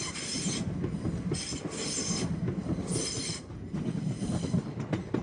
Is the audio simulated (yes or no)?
no